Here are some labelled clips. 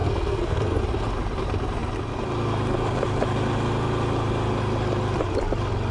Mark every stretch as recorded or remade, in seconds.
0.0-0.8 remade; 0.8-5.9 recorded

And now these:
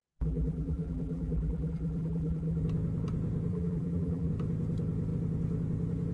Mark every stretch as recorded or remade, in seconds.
0.0-2.6 remade; 2.6-3.5 recorded; 3.5-4.3 remade; 4.3-6.1 recorded

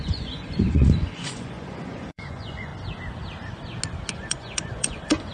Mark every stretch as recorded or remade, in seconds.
0.0-2.7 remade; 2.7-4.1 recorded; 4.1-5.3 remade